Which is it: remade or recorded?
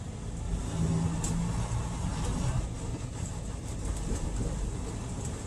recorded